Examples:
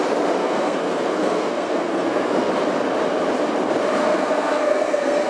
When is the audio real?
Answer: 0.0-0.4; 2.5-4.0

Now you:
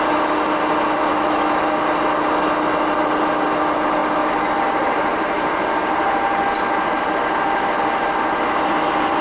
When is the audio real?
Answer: 0.0-1.1; 1.6-9.2

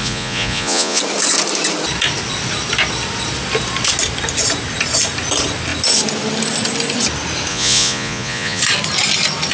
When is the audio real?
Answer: 1.0-7.5; 8.6-9.5

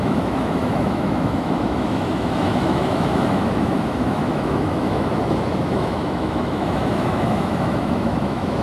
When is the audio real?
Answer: none

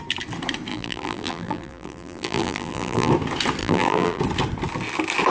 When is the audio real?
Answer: 0.0-0.7; 3.1-3.6; 4.2-5.3